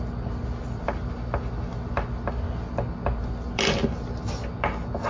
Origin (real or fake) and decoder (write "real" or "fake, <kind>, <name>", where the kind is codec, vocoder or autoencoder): real